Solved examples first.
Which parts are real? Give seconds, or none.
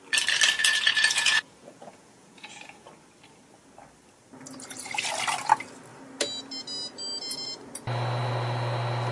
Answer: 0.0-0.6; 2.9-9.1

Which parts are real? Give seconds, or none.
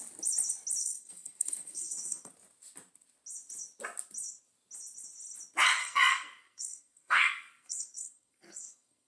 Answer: 0.0-0.8; 2.3-5.8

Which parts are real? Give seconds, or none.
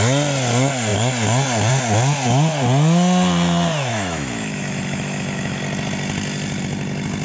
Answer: 0.0-3.9; 5.6-7.2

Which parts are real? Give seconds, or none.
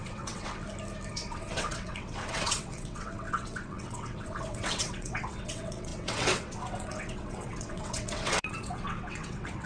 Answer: 0.6-1.1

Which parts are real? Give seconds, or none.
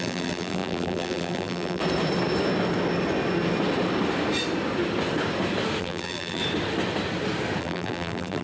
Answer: 1.8-5.8; 6.4-7.6